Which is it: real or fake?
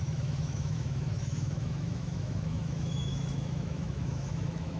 fake